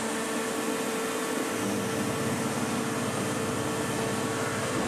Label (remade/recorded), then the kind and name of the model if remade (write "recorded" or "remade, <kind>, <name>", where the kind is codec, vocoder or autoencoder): recorded